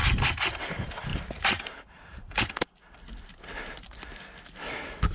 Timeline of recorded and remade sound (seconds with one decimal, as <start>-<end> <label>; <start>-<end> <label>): 0.0-1.1 recorded; 1.1-2.4 remade; 2.4-5.1 recorded